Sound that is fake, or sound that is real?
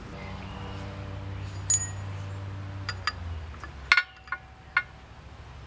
real